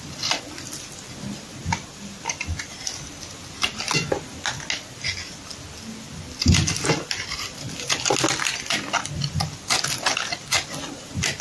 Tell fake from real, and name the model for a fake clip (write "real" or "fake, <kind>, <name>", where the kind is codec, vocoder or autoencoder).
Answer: real